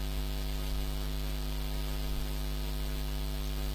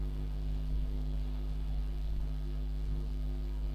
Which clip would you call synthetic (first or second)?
second